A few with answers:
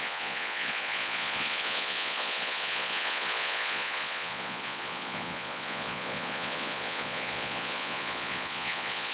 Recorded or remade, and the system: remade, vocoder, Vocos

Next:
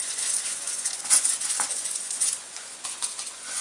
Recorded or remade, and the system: remade, vocoder, Vocos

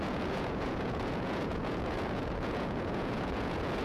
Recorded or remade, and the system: remade, vocoder, Vocos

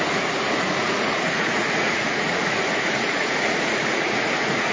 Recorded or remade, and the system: remade, vocoder, Vocos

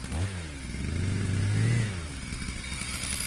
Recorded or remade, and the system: recorded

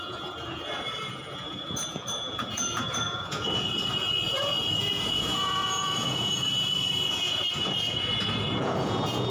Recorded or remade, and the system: remade, vocoder, Vocos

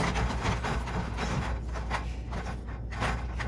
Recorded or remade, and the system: recorded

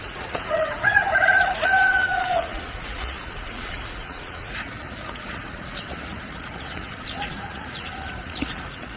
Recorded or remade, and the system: remade, vocoder, Vocos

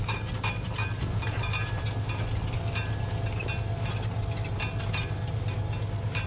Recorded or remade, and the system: recorded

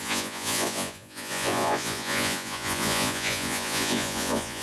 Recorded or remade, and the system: remade, vocoder, Vocos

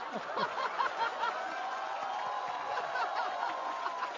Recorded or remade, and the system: remade, vocoder, Vocos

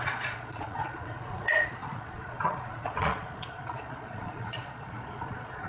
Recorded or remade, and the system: remade, vocoder, Vocos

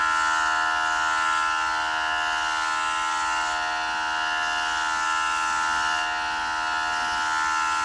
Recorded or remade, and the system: recorded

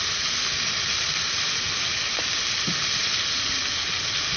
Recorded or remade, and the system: recorded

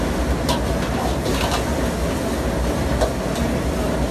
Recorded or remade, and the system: recorded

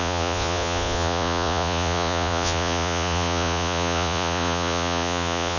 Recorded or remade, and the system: remade, vocoder, Vocos